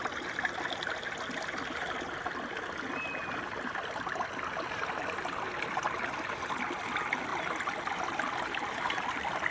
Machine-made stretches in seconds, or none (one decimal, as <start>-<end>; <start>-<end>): none